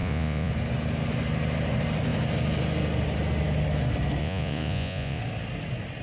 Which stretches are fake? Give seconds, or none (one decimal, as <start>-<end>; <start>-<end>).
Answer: 0.0-0.5; 4.2-5.2